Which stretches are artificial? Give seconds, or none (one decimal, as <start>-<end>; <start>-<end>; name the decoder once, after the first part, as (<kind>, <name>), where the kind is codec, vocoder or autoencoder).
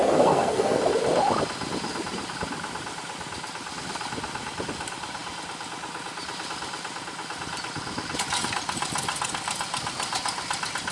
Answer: 0.0-0.8 (codec, SNAC)